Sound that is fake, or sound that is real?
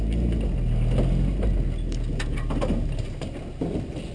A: real